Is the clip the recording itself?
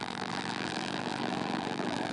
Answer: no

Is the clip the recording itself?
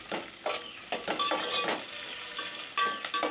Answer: yes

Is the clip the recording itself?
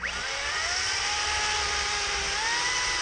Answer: yes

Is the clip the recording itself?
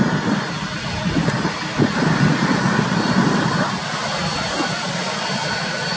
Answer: yes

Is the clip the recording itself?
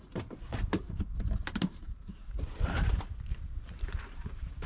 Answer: no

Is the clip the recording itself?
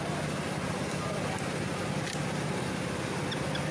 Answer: yes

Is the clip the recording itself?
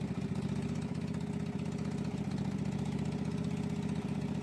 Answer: yes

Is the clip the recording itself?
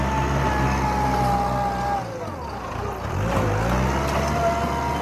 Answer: yes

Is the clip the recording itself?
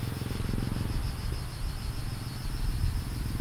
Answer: yes